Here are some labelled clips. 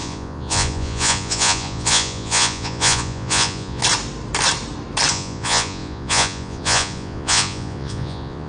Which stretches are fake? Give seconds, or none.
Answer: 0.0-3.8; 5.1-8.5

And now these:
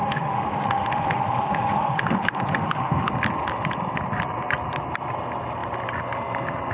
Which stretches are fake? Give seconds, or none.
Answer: 0.0-3.1